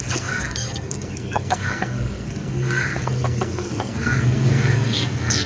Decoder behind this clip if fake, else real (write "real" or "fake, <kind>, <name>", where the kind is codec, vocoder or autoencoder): fake, codec, SNAC